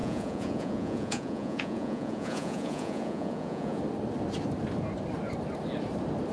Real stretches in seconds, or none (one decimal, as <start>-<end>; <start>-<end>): 3.8-6.3